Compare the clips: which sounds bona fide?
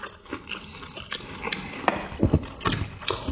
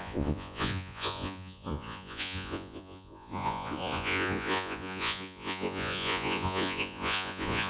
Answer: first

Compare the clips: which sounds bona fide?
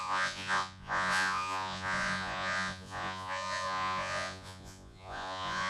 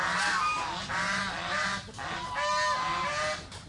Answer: second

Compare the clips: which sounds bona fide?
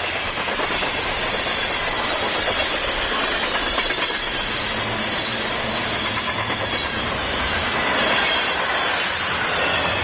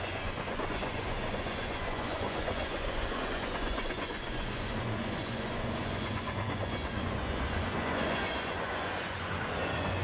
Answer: first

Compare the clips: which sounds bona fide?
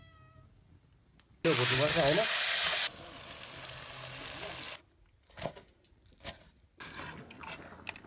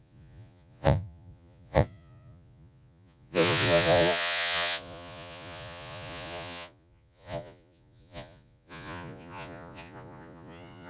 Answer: first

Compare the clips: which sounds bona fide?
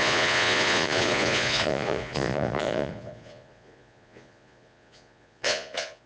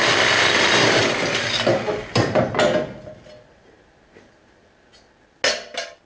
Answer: second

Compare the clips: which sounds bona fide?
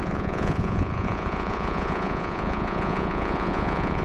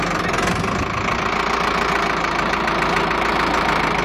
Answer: second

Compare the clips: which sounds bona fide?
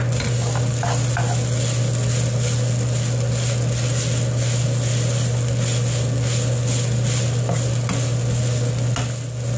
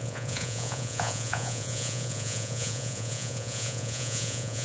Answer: first